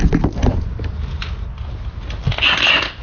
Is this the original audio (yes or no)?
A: yes